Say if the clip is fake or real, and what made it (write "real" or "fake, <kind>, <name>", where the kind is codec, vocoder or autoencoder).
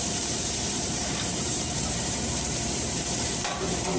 fake, vocoder, BigVGAN v2